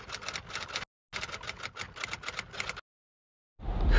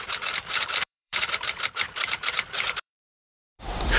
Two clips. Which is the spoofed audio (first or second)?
second